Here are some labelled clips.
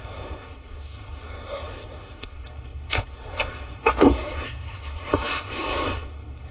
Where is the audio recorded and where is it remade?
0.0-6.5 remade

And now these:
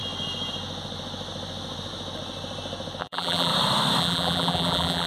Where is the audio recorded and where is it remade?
0.0-3.0 recorded; 3.0-3.5 remade; 3.5-4.0 recorded; 4.0-5.1 remade